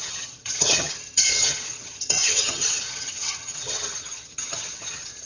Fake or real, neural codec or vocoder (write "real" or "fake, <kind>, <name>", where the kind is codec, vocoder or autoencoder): fake, vocoder, HiFi-GAN